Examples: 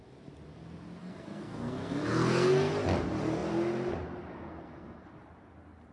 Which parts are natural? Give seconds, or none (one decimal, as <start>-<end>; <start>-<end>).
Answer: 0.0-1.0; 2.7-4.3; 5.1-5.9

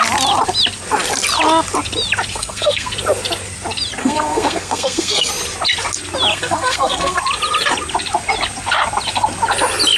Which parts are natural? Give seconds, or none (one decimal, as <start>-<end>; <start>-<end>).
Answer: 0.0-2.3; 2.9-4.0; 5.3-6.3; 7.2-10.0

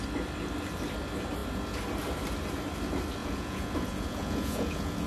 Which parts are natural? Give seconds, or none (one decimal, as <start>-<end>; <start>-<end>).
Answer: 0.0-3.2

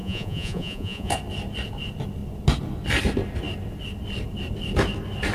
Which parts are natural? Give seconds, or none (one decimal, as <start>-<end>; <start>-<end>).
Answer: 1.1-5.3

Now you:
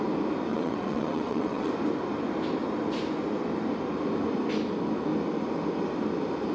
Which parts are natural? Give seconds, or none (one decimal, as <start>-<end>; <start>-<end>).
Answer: 0.0-0.5; 1.7-6.5

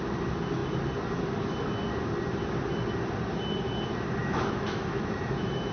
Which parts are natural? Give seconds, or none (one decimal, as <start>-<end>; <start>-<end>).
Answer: 0.0-4.2

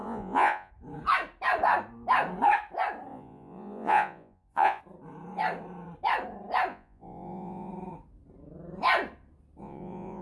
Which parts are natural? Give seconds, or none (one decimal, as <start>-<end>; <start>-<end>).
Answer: 0.7-3.1; 4.8-6.7; 7.7-9.6

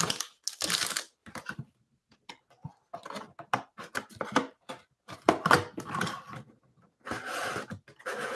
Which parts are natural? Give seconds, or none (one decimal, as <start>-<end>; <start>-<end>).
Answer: 0.0-1.2; 2.3-8.4